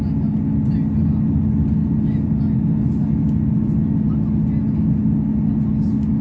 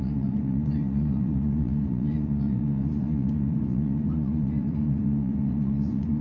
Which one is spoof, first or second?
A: second